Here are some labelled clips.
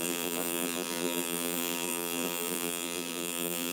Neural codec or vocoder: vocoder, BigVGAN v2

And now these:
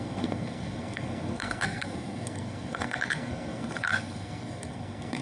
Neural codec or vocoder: codec, SNAC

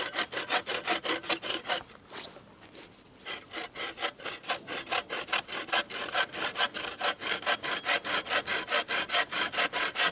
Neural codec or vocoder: none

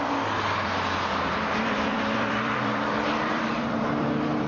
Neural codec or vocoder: vocoder, BigVGAN v2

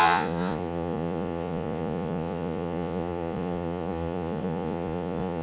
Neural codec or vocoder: vocoder, Vocos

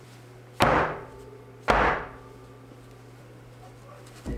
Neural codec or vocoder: none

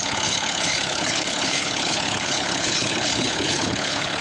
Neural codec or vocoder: codec, HILCodec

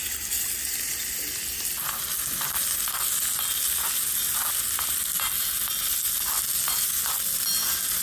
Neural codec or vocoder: none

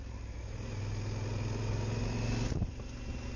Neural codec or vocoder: none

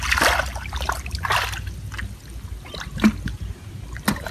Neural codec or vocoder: none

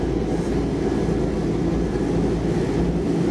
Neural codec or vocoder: none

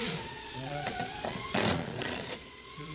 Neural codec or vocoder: vocoder, Vocos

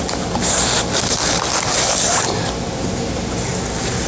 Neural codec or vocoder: none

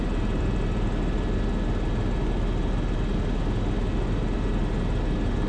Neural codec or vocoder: none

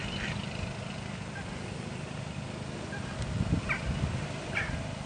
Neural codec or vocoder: none